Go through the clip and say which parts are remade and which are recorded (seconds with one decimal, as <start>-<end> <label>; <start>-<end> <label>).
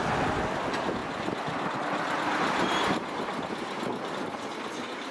0.0-5.1 recorded